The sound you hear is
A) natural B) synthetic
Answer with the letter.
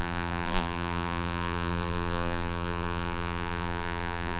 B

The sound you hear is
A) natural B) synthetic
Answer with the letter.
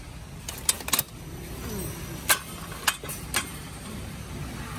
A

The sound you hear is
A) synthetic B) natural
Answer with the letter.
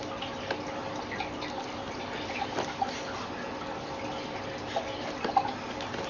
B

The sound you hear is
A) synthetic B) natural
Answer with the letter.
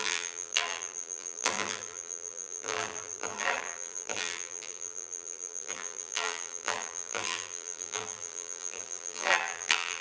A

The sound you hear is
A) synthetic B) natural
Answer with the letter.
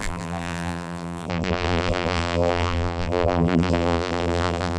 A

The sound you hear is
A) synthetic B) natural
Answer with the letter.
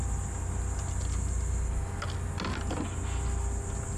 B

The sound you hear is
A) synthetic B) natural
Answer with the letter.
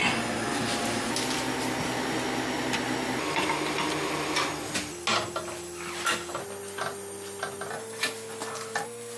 B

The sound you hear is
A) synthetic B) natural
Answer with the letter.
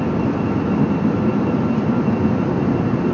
A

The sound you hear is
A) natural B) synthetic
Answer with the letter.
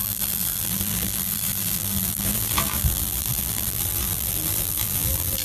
B